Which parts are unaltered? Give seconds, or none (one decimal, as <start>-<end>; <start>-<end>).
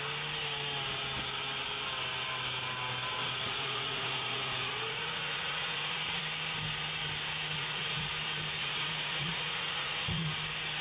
0.0-3.2; 6.2-7.5; 8.1-8.6; 10.3-10.8